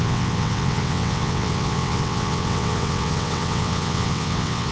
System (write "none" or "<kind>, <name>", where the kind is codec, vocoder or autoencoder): vocoder, WaveNeXt